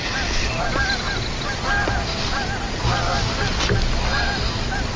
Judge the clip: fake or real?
real